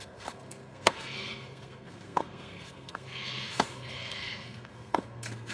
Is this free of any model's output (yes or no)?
no